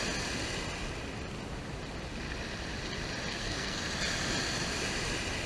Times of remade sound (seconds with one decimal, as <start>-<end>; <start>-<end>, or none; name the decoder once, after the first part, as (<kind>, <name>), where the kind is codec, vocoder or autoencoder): 3.3-3.8 (codec, SNAC)